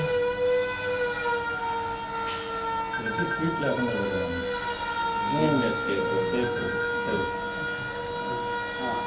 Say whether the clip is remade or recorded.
recorded